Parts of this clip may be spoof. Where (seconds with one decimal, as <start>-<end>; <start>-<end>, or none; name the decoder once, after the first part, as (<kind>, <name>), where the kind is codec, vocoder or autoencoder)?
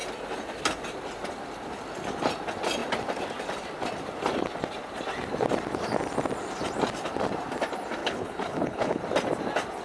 8.0-9.0 (codec, HILCodec)